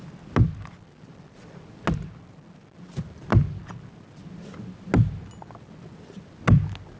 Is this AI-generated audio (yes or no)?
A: no